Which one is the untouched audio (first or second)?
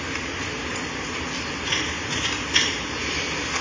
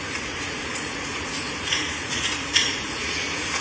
first